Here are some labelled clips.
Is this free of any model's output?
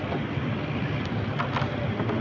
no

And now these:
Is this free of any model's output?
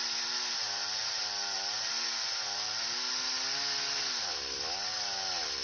yes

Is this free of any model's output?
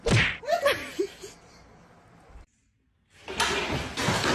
yes